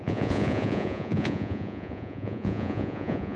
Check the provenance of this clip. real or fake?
fake